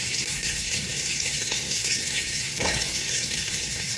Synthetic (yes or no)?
yes